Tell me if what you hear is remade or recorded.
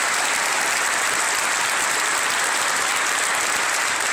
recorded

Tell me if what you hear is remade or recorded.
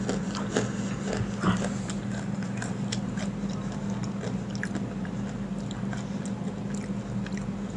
recorded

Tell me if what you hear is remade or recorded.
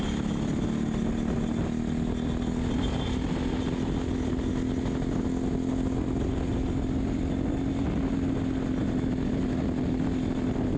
recorded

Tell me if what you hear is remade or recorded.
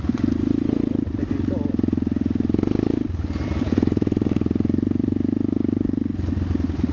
recorded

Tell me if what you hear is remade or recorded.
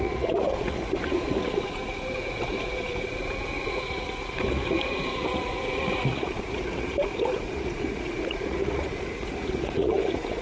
remade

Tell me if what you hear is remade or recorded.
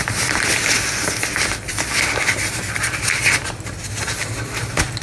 recorded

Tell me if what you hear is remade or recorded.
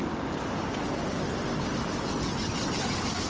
recorded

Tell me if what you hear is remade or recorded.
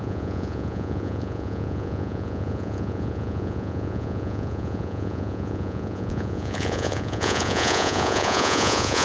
remade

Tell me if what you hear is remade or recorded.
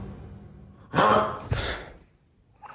recorded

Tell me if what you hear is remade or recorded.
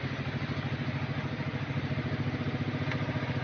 recorded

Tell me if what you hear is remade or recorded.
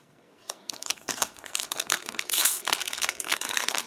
remade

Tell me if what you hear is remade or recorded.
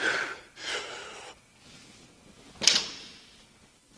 recorded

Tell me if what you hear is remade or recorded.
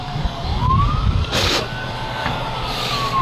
remade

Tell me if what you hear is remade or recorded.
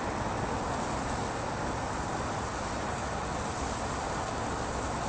recorded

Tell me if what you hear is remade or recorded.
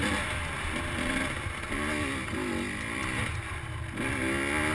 recorded